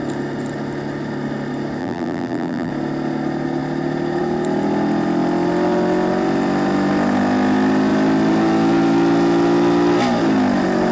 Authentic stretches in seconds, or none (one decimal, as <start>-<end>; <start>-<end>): 0.0-1.8; 2.7-10.9